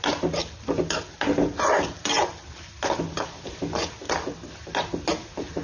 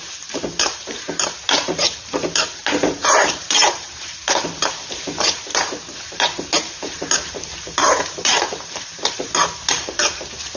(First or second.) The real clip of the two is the first